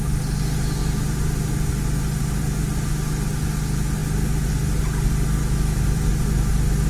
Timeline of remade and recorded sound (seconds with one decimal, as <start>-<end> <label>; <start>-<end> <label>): 0.0-5.4 recorded; 5.4-6.1 remade; 6.1-6.9 recorded